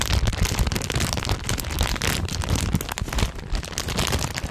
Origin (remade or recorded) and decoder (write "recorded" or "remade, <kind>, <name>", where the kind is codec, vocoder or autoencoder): recorded